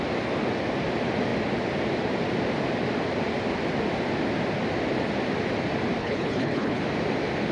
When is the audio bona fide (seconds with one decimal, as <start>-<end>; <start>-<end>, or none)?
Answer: 0.0-6.0; 6.8-7.5